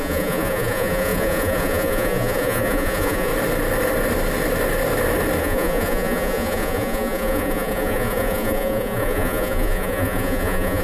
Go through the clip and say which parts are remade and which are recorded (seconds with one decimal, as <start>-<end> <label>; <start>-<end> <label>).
0.0-3.3 remade; 3.3-5.4 recorded; 5.4-10.8 remade